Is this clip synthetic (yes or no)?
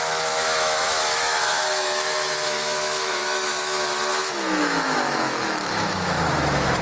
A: yes